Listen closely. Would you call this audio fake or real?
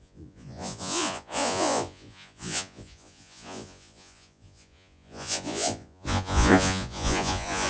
fake